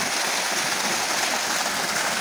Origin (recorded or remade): recorded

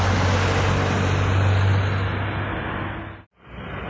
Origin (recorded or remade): recorded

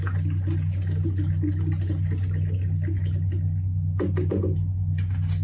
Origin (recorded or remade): recorded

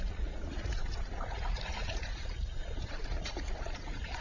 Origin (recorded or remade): remade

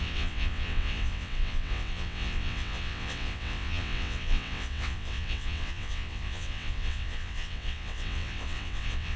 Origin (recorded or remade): remade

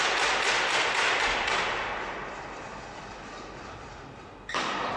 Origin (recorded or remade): recorded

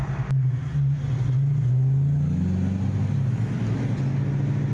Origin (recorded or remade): recorded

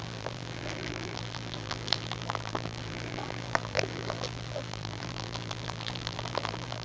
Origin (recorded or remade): remade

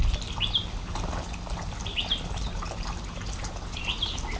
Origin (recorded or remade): recorded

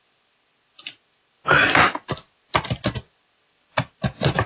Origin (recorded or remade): recorded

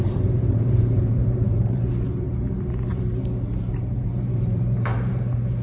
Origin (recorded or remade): remade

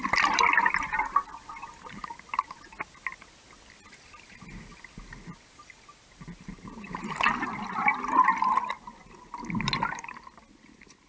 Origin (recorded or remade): recorded